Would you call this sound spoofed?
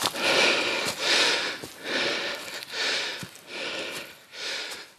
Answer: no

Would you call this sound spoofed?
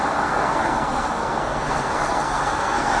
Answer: yes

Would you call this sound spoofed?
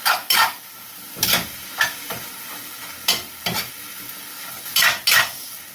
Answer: no